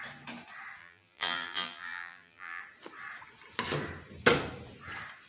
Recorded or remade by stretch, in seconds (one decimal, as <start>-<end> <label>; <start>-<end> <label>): 0.0-0.8 recorded; 0.8-2.6 remade; 2.6-5.3 recorded